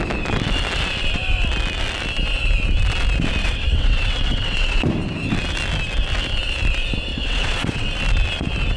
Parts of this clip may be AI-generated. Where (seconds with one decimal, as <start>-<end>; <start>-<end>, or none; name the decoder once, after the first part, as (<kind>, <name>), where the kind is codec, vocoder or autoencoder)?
3.4-4.8 (vocoder, WaveNeXt); 7.1-7.9